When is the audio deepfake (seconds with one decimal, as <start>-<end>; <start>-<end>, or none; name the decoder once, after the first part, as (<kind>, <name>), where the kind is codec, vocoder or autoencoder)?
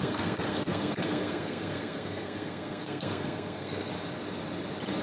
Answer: 0.0-3.9 (codec, SNAC)